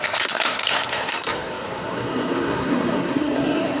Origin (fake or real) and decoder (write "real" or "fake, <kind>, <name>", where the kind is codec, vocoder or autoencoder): fake, codec, SNAC